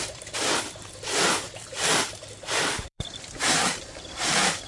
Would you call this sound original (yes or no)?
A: no